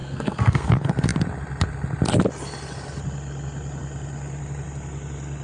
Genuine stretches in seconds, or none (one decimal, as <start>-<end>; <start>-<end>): 0.7-5.4